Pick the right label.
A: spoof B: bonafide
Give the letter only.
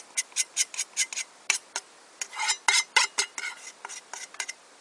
B